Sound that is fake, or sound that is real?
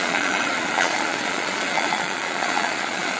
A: fake